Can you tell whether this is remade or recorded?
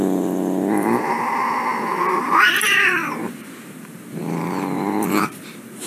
remade